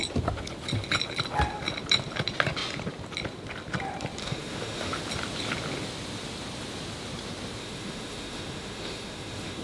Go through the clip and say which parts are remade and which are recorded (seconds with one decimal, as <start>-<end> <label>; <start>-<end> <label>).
0.0-4.2 recorded; 4.2-5.0 remade; 5.0-7.6 recorded; 7.6-9.6 remade